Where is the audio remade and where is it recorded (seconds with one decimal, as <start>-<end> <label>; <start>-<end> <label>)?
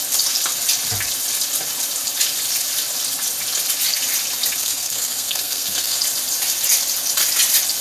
0.0-4.6 recorded; 4.6-6.0 remade; 6.0-7.8 recorded